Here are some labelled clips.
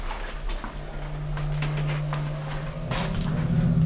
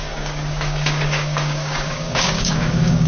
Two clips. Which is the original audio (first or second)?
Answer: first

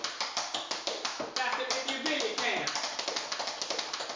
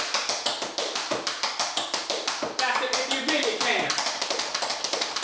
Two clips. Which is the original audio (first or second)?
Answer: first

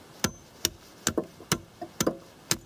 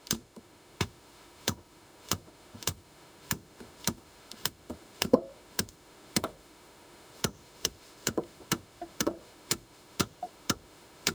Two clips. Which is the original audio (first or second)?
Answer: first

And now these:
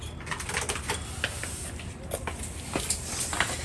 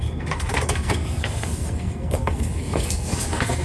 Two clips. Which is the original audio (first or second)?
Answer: first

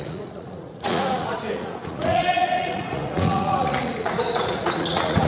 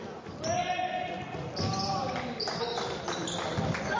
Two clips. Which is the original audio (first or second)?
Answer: second